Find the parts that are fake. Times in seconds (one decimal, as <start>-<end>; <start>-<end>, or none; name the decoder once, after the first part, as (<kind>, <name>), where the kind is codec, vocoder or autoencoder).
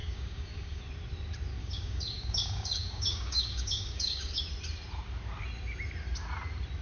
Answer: 0.0-0.8 (codec, DAC); 1.6-4.4